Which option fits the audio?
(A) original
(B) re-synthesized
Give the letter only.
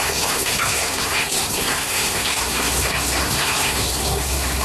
B